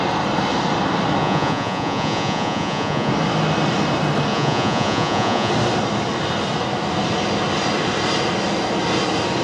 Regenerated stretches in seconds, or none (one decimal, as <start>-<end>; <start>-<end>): 1.2-3.1; 4.3-5.5